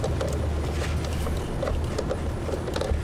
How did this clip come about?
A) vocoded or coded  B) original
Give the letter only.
B